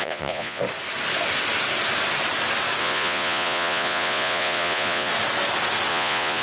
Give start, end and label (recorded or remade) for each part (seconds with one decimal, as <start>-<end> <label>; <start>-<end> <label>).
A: 0.0-0.6 remade; 0.6-2.8 recorded; 2.8-5.1 remade; 5.1-5.9 recorded; 5.9-6.4 remade